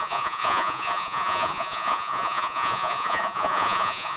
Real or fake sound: fake